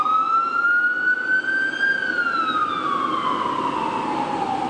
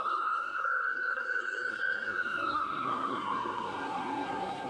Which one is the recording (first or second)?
first